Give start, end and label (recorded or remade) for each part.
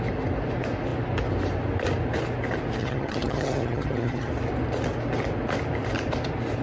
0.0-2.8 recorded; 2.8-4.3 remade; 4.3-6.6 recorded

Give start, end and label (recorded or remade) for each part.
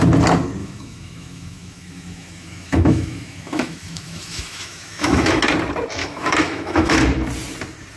0.0-0.6 recorded; 0.6-5.4 remade; 5.4-6.0 recorded; 6.0-7.0 remade; 7.0-8.0 recorded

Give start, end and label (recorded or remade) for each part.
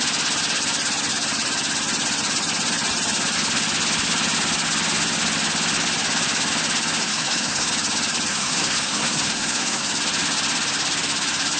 0.0-7.0 recorded; 7.0-7.7 remade; 7.7-8.3 recorded; 8.3-9.9 remade; 9.9-11.6 recorded